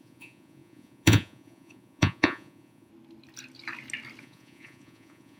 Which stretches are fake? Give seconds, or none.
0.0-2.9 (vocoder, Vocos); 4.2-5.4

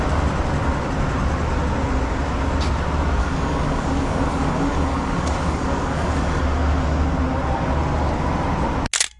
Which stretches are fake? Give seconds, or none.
3.2-6.4 (codec, DAC)

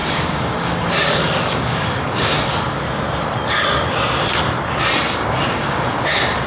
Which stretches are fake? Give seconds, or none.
0.0-2.8 (codec, DAC); 5.2-6.1

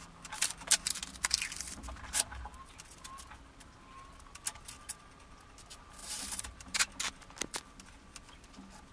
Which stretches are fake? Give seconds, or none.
6.0-6.9 (vocoder, BigVGAN v2)

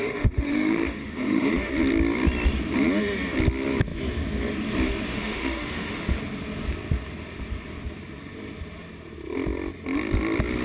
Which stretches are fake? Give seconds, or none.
0.0-1.7 (autoencoder, DAC-VAE); 5.1-6.2

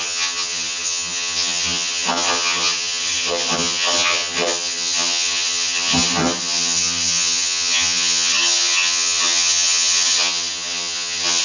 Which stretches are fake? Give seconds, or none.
0.0-11.4 (vocoder, HiFi-GAN)

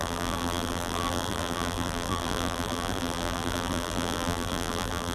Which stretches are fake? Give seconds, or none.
0.0-5.1 (vocoder, BigVGAN v2)